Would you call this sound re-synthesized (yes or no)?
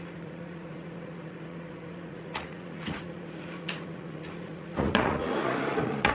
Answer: yes